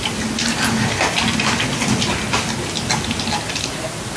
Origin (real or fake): real